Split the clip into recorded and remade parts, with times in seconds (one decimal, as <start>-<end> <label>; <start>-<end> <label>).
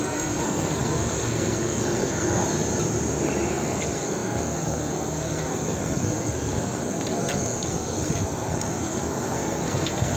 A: 0.0-2.4 remade; 2.4-3.5 recorded; 3.5-10.2 remade